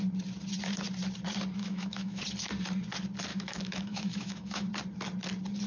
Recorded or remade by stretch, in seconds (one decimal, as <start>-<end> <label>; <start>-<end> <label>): 0.0-1.6 recorded; 1.6-2.2 remade; 2.2-3.3 recorded; 3.3-4.7 remade; 4.7-5.7 recorded